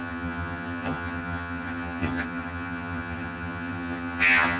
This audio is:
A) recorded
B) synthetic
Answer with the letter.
B